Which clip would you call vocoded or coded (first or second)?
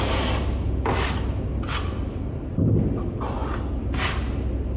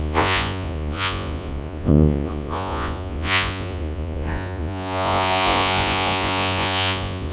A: second